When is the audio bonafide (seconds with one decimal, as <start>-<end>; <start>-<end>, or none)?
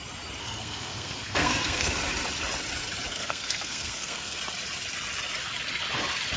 0.0-0.4; 1.9-3.1; 4.4-6.4